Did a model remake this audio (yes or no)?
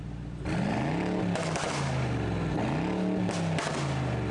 no